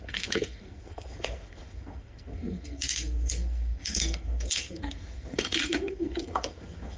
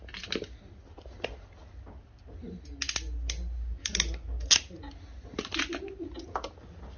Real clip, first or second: second